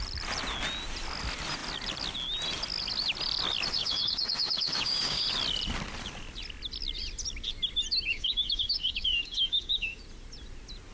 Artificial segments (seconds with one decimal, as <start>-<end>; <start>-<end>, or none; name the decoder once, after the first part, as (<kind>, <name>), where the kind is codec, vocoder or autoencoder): 3.8-5.2 (codec, DAC); 8.1-10.0